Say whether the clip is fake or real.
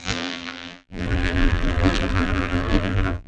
fake